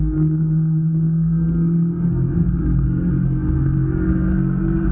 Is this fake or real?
fake